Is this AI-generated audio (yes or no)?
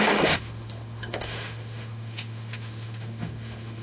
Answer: yes